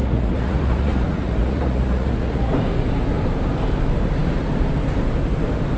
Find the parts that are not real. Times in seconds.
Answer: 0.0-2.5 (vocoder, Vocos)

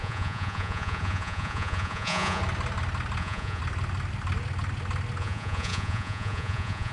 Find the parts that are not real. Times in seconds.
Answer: 0.0-2.4 (vocoder, Vocos); 3.2-3.6; 5.2-6.9

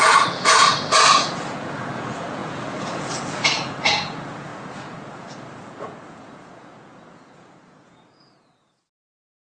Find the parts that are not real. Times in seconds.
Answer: 0.0-9.4 (vocoder, Vocos)

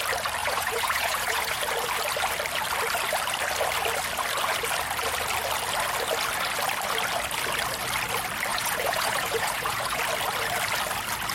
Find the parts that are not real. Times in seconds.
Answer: 0.4-1.6 (vocoder, Vocos); 8.5-10.0

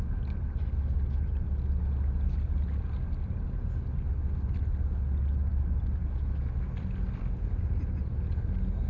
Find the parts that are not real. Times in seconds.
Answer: none

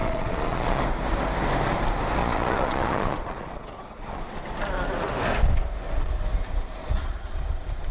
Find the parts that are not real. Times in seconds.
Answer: 0.0-0.8 (vocoder, Vocos); 2.2-4.4; 6.8-7.9

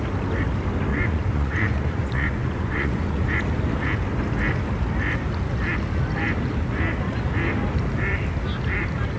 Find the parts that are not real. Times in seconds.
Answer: 0.9-3.4 (vocoder, Vocos)

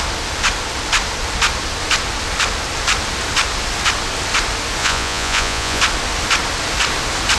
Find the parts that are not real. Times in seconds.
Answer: 4.8-5.8 (vocoder, Vocos)